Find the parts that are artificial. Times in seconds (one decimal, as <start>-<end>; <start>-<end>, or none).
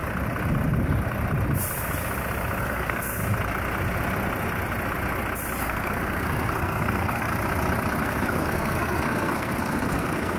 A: 2.6-3.2; 5.6-7.3; 8.0-10.4